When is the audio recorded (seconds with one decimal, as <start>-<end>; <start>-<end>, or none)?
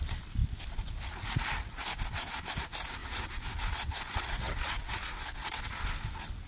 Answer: 0.0-3.0; 5.7-6.5